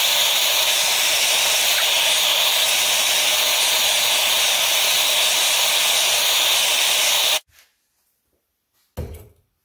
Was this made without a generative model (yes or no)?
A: yes